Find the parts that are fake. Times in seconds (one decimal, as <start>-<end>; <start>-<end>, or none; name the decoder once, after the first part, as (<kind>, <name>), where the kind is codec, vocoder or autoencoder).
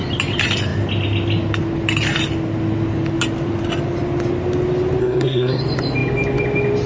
5.0-5.6 (codec, SNAC)